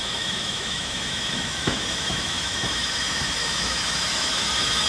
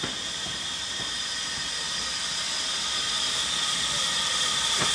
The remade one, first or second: first